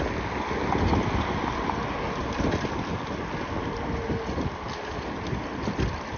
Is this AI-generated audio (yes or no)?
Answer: no